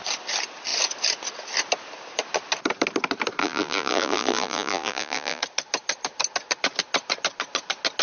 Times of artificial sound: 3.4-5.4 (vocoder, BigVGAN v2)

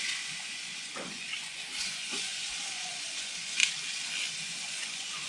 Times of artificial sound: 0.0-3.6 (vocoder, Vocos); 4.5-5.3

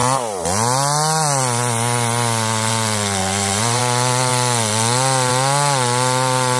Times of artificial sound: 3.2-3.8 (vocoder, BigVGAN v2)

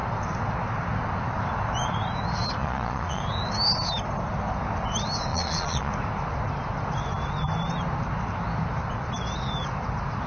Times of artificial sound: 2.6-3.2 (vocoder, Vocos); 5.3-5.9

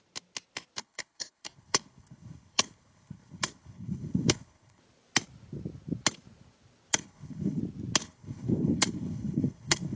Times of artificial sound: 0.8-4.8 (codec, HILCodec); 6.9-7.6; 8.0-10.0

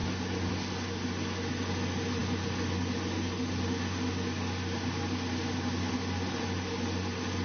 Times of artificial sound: none

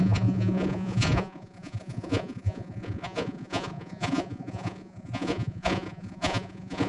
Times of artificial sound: 0.0-6.9 (vocoder, Vocos)

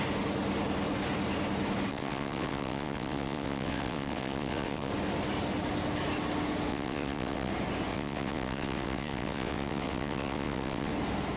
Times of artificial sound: 1.9-4.9 (vocoder, WaveNeXt); 6.7-7.5; 7.9-10.9